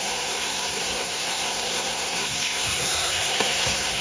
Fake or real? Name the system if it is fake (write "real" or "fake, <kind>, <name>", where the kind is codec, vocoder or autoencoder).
fake, codec, SNAC